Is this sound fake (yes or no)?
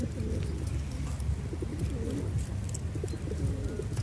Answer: no